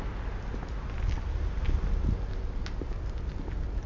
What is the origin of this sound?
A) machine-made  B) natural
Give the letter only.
B